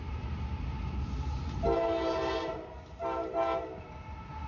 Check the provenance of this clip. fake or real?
real